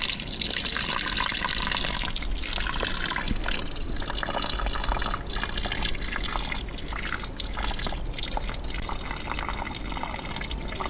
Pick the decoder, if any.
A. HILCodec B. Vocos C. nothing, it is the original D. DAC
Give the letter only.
C